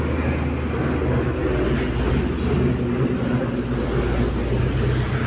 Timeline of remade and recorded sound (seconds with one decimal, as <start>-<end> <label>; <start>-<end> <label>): 0.0-5.3 recorded